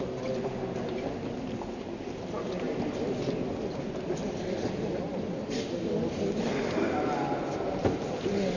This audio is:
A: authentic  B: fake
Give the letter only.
A